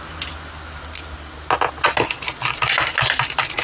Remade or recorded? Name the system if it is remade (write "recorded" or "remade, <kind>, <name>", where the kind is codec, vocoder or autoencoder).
recorded